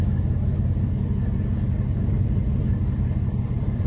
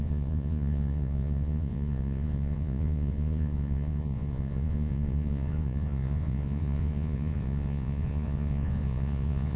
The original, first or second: first